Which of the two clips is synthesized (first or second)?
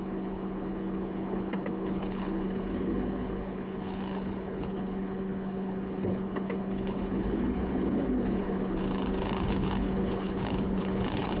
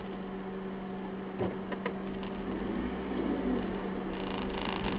first